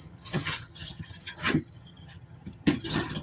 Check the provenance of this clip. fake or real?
fake